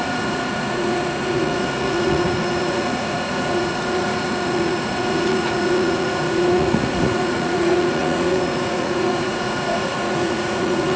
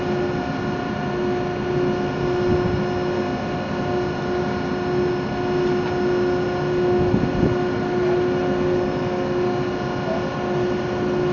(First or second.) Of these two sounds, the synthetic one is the first